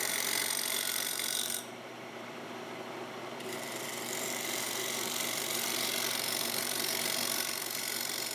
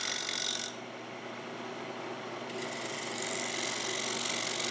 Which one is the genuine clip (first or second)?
second